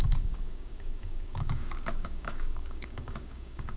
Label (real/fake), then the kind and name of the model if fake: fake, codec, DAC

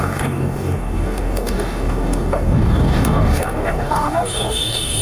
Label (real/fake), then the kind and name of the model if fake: fake, codec, DAC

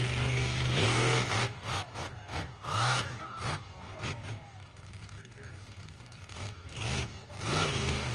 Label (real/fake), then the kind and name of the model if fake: fake, codec, DAC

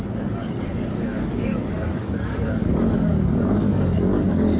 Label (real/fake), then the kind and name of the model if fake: fake, codec, DAC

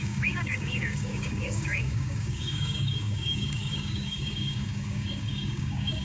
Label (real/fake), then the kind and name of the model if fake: fake, codec, DAC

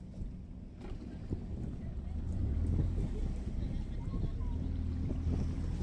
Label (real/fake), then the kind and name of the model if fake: real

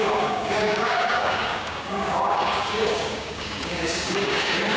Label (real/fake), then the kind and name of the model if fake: fake, codec, DAC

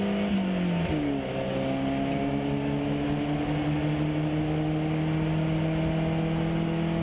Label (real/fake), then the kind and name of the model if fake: real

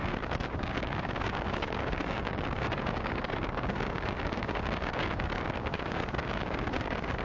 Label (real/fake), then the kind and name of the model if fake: fake, codec, DAC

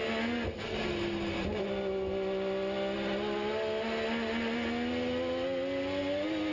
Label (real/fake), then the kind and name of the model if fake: real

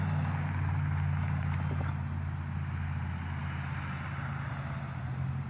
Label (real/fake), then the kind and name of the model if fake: real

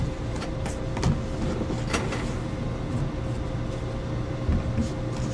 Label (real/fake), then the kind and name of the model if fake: real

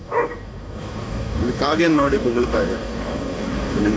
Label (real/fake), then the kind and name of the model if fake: fake, codec, DAC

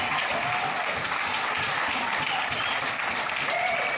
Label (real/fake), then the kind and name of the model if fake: real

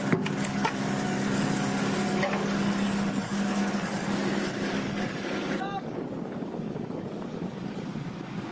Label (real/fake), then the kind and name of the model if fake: fake, codec, DAC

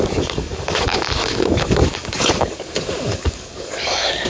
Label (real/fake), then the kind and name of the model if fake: fake, codec, DAC